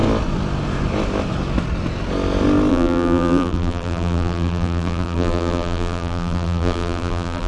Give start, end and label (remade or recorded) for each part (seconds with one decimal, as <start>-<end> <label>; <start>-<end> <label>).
0.0-2.7 recorded; 2.7-7.5 remade